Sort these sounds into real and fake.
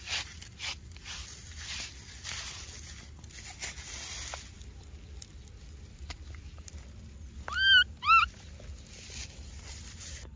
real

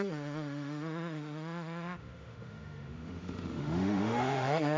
fake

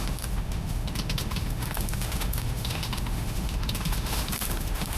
fake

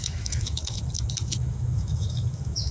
fake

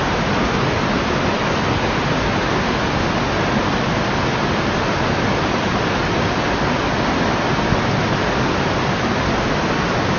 real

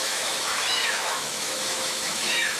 fake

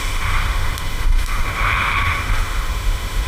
fake